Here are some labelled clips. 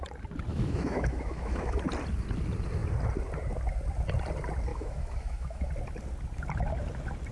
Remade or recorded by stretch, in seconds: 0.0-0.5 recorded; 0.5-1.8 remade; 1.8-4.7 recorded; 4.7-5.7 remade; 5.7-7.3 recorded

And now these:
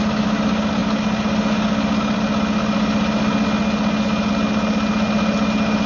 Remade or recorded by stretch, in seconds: 0.0-5.9 recorded

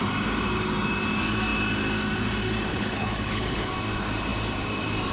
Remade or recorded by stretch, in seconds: 0.0-2.7 recorded; 2.7-3.7 remade; 3.7-5.1 recorded

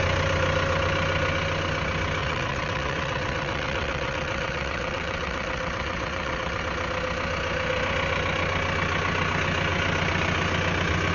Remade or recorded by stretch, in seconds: 0.0-2.2 recorded; 2.2-6.6 remade; 6.6-11.1 recorded